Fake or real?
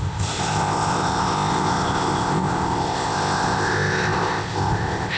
fake